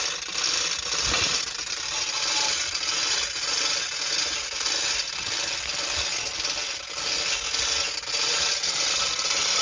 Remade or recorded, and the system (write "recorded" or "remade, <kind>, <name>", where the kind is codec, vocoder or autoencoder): recorded